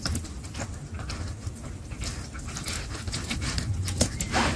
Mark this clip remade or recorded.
recorded